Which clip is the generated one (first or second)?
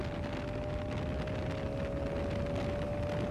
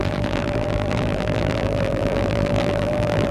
second